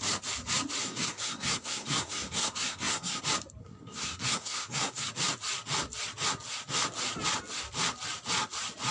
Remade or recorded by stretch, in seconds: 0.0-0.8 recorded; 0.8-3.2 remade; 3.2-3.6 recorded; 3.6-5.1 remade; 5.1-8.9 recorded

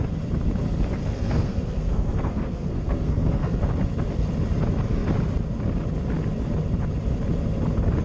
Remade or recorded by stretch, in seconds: 0.0-1.0 recorded; 1.0-3.6 remade; 3.6-8.0 recorded

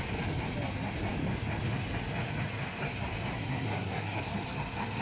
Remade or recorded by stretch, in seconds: 0.0-3.3 recorded; 3.3-4.2 remade; 4.2-5.0 recorded

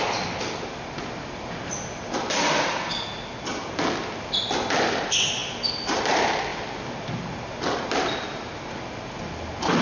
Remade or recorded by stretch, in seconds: 0.0-9.8 recorded